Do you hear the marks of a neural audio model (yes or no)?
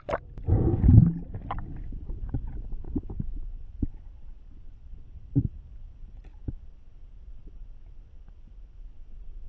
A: no